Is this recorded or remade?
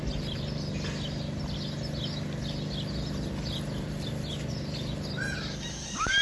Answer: recorded